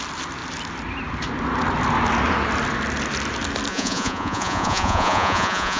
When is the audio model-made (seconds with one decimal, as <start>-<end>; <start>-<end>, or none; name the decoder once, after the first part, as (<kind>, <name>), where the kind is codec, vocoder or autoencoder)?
3.7-5.8 (vocoder, Vocos)